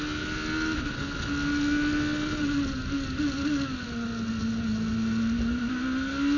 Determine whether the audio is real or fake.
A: real